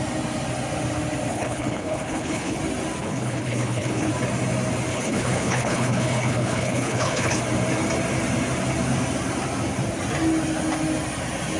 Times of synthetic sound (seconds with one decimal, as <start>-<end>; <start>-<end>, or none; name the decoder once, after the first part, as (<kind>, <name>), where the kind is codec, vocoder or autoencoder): 1.3-2.6 (codec, HILCodec); 3.0-4.1; 4.9-7.4